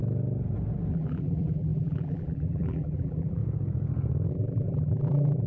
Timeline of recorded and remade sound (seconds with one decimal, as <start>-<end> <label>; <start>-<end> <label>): 0.0-0.9 recorded; 0.9-3.4 remade; 3.4-4.3 recorded; 4.3-5.5 remade